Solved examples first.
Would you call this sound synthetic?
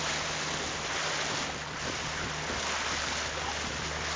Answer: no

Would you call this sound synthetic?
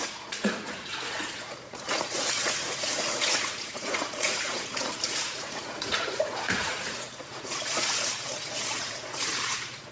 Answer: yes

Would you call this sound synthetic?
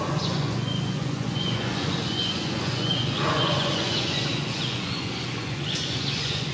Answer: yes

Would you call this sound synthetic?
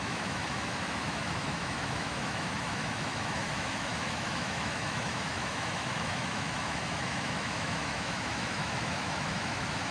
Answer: yes